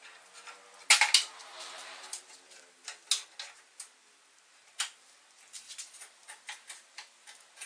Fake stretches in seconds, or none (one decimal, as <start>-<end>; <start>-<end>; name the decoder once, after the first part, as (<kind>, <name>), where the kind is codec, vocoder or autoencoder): 1.4-2.2 (vocoder, BigVGAN v2)